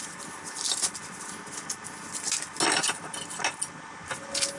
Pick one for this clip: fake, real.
real